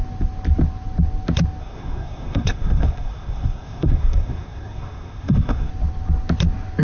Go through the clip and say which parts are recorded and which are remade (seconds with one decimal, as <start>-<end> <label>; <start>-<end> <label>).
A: 0.0-1.6 recorded; 1.6-5.7 remade; 5.7-6.8 recorded